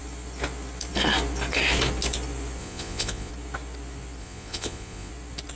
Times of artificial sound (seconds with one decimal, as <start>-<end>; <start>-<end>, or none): 2.6-3.3; 4.2-5.1